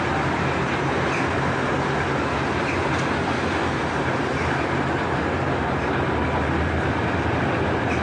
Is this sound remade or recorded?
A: recorded